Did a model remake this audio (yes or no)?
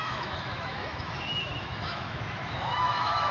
yes